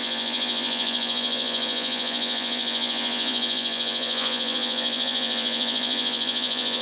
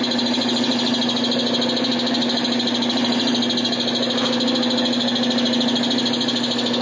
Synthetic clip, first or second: first